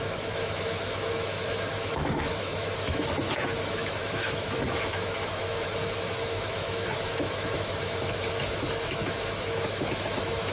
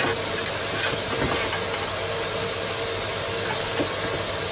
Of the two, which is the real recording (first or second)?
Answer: second